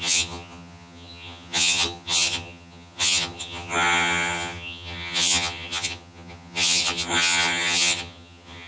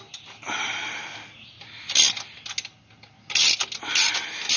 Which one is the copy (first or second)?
first